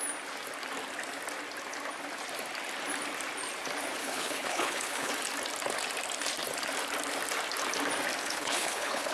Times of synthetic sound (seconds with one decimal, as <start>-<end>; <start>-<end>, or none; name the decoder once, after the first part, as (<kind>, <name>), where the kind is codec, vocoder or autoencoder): 4.0-5.1 (codec, HILCodec); 8.2-9.1